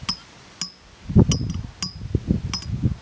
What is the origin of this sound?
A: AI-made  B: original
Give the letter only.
B